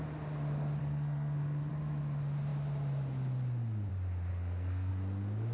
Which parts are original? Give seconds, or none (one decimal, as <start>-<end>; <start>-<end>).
0.0-0.8; 1.7-4.3; 4.9-5.5